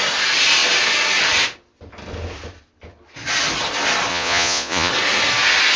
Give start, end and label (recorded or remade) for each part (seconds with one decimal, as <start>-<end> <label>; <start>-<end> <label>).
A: 0.0-4.1 recorded; 4.1-4.9 remade; 4.9-5.8 recorded